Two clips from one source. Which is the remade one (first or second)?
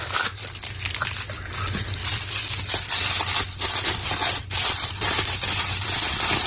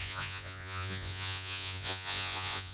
second